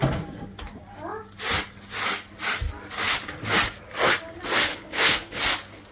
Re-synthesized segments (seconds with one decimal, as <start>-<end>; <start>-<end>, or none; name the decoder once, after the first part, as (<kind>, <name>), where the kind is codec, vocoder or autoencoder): 4.7-5.4 (codec, HILCodec)